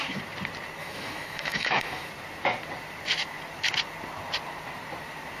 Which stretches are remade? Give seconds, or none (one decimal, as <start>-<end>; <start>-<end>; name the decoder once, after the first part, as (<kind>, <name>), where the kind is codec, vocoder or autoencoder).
0.8-2.1 (autoencoder, DAC-VAE)